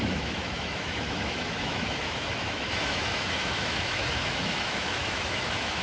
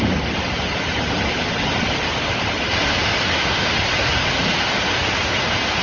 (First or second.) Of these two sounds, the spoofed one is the first